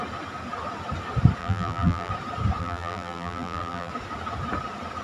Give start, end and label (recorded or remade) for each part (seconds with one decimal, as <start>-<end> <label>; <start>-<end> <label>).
0.0-1.4 recorded; 1.4-2.1 remade; 2.1-2.6 recorded; 2.6-3.9 remade; 3.9-5.0 recorded